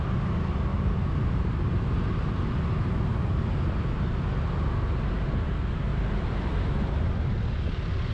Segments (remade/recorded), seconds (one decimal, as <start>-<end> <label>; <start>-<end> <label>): 0.0-0.7 recorded; 0.7-2.7 remade; 2.7-5.9 recorded; 5.9-6.6 remade; 6.6-8.1 recorded

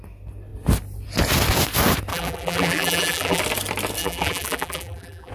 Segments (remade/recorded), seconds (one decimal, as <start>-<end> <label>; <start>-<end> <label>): 0.0-2.1 recorded; 2.1-3.4 remade; 3.4-4.0 recorded; 4.0-5.3 remade

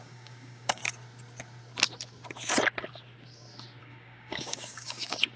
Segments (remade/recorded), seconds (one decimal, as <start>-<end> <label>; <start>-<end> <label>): 0.0-0.8 remade; 0.8-3.8 recorded; 3.8-5.4 remade

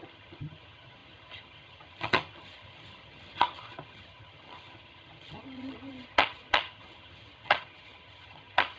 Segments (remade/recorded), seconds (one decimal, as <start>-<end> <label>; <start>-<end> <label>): 0.0-8.8 remade